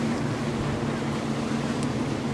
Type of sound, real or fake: real